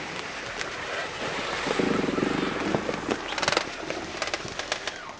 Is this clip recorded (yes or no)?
yes